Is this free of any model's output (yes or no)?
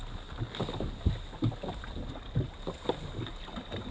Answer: yes